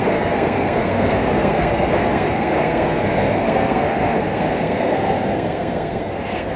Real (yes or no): no